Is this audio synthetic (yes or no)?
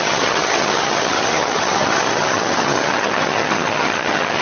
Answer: yes